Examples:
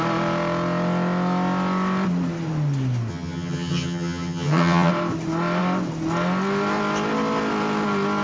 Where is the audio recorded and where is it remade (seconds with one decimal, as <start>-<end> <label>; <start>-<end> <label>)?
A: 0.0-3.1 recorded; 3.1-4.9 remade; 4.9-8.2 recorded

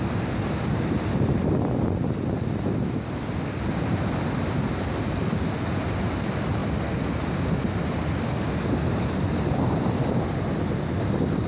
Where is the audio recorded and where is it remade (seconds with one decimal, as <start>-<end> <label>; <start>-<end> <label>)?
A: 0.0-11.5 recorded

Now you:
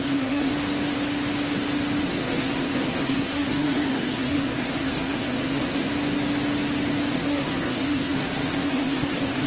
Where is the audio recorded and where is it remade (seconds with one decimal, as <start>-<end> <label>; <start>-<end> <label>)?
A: 0.0-0.5 remade; 0.5-2.0 recorded; 2.0-5.9 remade; 5.9-7.1 recorded; 7.1-9.5 remade